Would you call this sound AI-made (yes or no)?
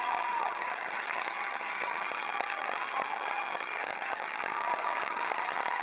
yes